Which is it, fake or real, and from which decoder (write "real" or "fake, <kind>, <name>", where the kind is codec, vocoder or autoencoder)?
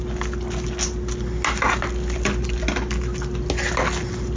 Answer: real